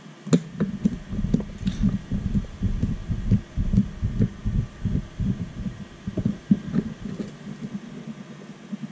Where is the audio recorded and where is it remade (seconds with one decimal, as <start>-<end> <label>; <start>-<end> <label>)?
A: 0.0-8.9 recorded